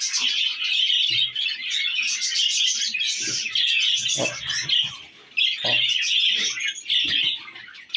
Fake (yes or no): no